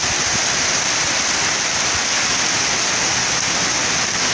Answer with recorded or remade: recorded